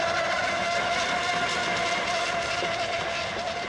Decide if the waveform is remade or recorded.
recorded